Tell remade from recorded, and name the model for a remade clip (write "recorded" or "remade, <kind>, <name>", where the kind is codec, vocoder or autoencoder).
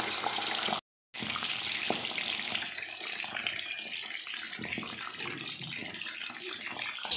recorded